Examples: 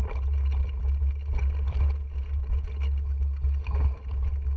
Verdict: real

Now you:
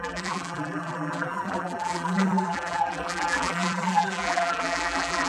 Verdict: fake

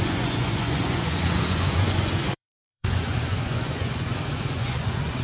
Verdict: fake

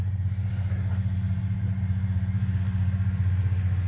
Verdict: real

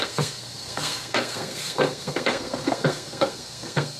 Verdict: fake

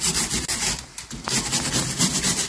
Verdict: real